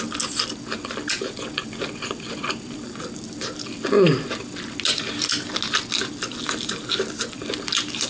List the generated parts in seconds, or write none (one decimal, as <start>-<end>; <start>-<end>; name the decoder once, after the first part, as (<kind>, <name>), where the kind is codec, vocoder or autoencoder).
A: none